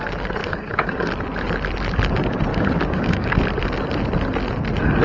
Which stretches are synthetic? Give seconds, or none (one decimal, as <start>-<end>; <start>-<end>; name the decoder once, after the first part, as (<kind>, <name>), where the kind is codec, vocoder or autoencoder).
0.4-1.1 (codec, DAC); 2.5-3.4